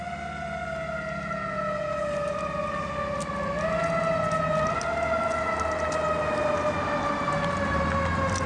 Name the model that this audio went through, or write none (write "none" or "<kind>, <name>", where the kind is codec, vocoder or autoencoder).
none